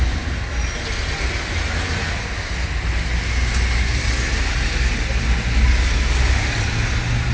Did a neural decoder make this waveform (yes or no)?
no